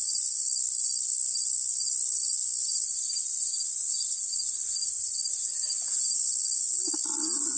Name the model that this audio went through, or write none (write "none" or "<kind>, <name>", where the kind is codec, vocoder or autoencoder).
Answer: none